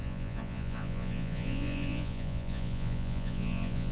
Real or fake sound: fake